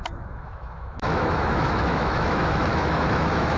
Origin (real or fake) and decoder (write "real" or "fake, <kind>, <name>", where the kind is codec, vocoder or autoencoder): fake, autoencoder, DAC-VAE